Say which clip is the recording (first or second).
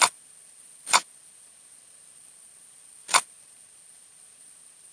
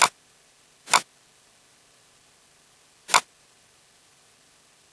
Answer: second